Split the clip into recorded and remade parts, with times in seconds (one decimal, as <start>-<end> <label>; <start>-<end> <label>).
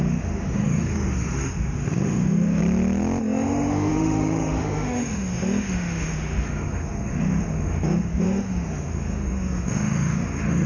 0.0-2.6 remade; 2.6-3.2 recorded; 3.2-10.7 remade